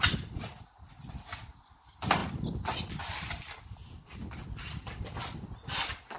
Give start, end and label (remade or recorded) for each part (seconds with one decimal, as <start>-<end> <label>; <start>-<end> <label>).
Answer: 0.0-6.2 recorded